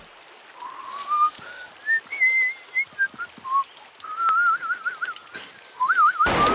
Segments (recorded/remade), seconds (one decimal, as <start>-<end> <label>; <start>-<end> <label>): 0.0-0.9 recorded; 0.9-1.7 remade; 1.7-6.5 recorded